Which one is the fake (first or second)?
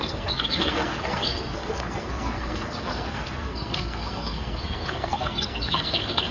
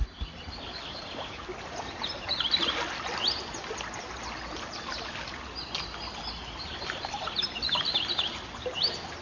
first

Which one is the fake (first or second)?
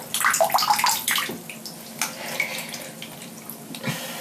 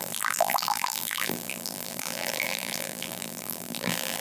second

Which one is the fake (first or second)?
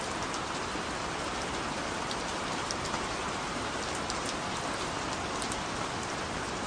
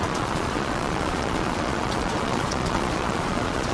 second